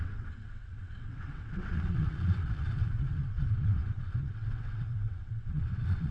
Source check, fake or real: fake